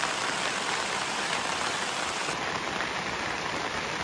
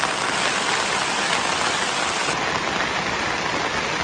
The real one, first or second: second